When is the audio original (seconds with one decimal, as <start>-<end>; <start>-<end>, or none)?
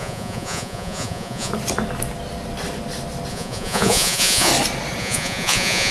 1.5-3.3; 4.5-5.0